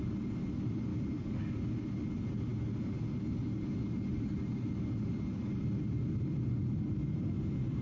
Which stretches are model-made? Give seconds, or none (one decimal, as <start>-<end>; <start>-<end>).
none